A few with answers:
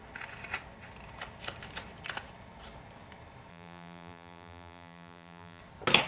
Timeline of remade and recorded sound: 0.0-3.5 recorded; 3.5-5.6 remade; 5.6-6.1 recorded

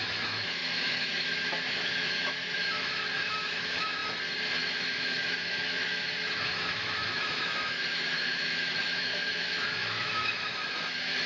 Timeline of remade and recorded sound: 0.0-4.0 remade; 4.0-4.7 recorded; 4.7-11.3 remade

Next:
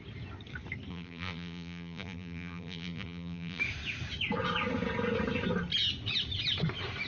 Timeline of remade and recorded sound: 0.0-0.9 recorded; 0.9-3.6 remade; 3.6-7.1 recorded

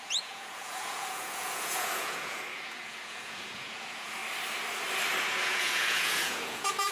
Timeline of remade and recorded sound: 0.0-4.2 remade; 4.2-5.2 recorded; 5.2-6.9 remade